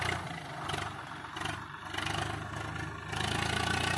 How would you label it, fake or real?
real